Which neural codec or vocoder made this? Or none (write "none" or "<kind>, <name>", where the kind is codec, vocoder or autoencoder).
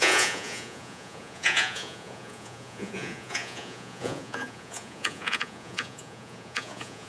vocoder, Vocos